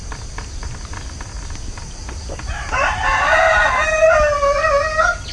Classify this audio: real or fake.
real